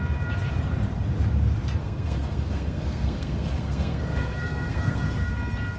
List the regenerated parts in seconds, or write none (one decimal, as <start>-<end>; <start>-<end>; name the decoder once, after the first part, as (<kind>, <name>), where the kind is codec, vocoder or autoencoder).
1.8-5.3 (codec, SNAC)